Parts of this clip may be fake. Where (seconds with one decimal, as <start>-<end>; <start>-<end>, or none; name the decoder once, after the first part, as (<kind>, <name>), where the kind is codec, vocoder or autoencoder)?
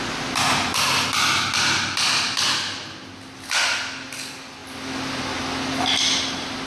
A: none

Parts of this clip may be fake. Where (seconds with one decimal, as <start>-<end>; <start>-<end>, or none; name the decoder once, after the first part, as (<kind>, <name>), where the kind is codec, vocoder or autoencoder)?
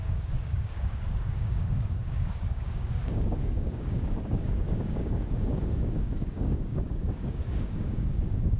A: 0.0-8.6 (codec, DAC)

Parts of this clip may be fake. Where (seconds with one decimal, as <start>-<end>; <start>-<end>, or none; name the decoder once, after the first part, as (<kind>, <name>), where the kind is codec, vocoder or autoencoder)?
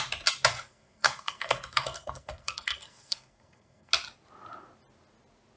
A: 0.5-3.9 (codec, SNAC)